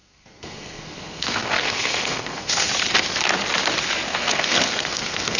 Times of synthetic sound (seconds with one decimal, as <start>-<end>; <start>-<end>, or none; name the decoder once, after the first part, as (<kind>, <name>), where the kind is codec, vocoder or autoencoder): 0.0-2.7 (codec, SNAC); 4.1-5.4